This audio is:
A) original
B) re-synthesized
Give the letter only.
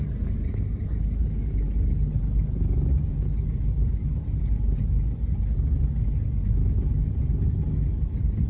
A